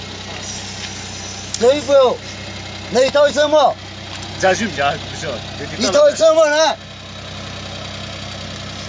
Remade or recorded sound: recorded